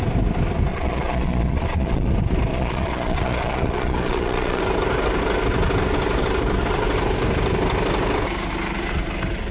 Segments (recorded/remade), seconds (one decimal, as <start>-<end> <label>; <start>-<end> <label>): 0.0-0.7 recorded; 0.7-2.1 remade; 2.1-2.5 recorded; 2.5-4.6 remade; 4.6-9.5 recorded